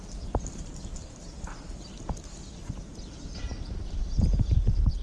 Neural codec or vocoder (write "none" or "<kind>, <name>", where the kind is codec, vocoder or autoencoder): none